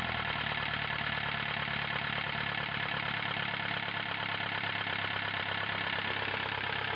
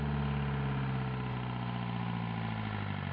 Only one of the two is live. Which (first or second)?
second